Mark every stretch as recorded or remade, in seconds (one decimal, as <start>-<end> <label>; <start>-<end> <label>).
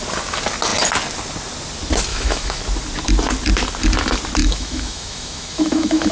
0.0-2.1 recorded; 2.1-2.6 remade; 2.6-4.4 recorded; 4.4-6.1 remade